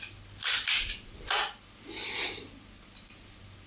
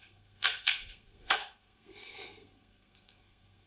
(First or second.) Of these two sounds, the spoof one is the second